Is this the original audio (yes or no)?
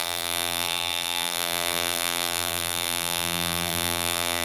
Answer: no